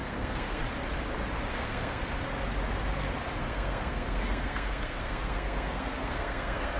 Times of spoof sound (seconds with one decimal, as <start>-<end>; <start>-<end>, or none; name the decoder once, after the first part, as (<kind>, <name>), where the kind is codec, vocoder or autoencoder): 0.0-0.6 (codec, SNAC); 1.5-2.0; 3.4-6.8